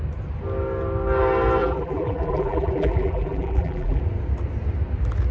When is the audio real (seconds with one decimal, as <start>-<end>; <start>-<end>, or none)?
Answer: 0.0-1.6; 4.0-5.3